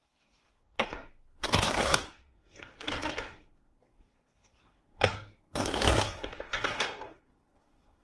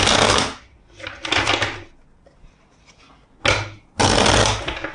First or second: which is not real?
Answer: first